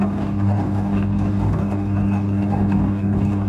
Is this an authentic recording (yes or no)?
no